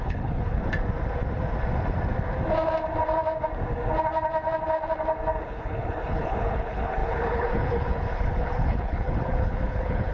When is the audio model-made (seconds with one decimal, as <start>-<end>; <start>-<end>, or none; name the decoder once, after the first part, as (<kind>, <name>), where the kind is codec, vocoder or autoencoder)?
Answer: 0.0-0.6 (codec, HILCodec); 5.4-10.1